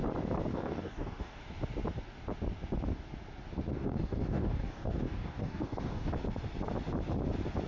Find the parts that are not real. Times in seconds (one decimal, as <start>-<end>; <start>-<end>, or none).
0.5-1.4; 3.7-6.1